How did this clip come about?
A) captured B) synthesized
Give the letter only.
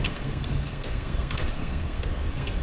B